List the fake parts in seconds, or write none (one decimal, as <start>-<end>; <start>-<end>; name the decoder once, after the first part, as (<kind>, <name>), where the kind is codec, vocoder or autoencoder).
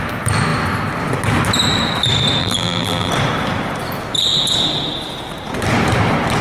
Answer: 2.4-3.1 (vocoder, BigVGAN v2)